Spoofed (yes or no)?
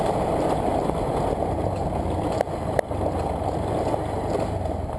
no